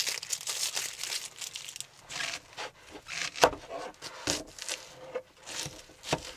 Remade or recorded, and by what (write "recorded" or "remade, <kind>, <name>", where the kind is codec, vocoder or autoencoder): recorded